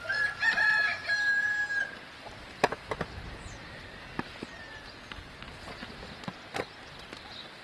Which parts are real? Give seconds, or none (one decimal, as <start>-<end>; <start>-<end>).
0.0-7.6